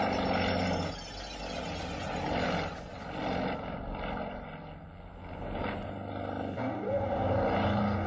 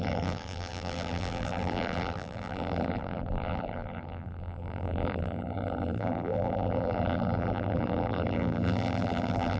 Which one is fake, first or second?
second